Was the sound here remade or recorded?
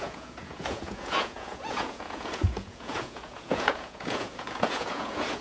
remade